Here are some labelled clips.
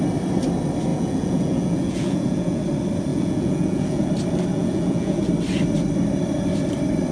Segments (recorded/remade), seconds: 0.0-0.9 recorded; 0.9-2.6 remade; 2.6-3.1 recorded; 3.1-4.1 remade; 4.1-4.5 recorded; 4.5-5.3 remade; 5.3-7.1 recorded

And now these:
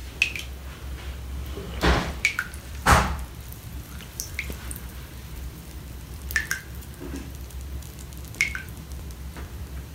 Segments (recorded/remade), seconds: 0.0-1.8 recorded; 1.8-2.8 remade; 2.8-3.5 recorded; 3.5-9.9 remade

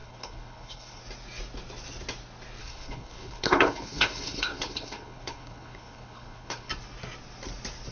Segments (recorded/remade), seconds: 0.0-1.0 remade; 1.0-2.6 recorded; 2.6-6.7 remade; 6.7-7.9 recorded